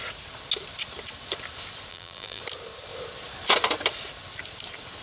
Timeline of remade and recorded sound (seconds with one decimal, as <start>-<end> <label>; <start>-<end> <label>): 0.0-1.9 recorded; 1.9-2.4 remade; 2.4-5.0 recorded